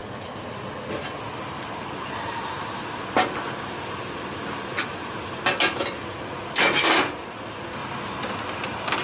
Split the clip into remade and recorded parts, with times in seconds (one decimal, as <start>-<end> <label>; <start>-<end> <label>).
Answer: 0.0-9.0 recorded